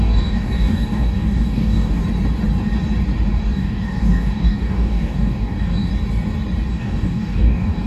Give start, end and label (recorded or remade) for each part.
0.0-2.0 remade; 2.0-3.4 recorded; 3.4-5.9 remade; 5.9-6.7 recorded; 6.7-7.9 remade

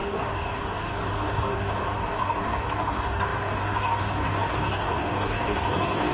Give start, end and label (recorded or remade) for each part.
0.0-6.1 remade

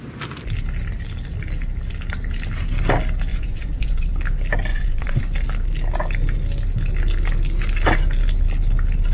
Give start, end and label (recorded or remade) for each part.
0.0-3.3 recorded; 3.3-4.1 remade; 4.1-4.7 recorded; 4.7-5.2 remade; 5.2-9.1 recorded

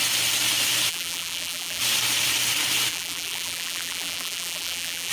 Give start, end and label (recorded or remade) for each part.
0.0-0.9 recorded; 0.9-1.8 remade; 1.8-2.9 recorded; 2.9-5.1 remade

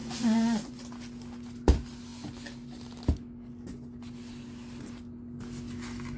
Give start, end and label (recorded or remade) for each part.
0.0-0.8 remade; 0.8-6.2 recorded

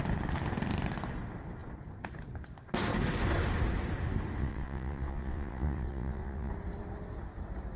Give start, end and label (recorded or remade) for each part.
0.0-4.4 recorded; 4.4-6.5 remade; 6.5-7.8 recorded